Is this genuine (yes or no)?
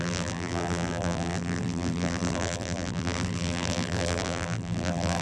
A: no